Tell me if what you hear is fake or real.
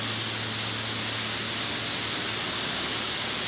real